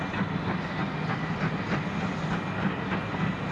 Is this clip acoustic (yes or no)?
yes